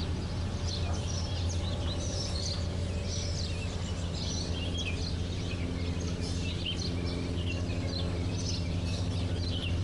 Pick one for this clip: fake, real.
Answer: real